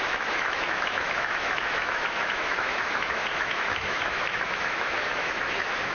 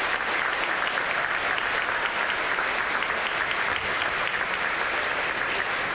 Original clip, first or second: second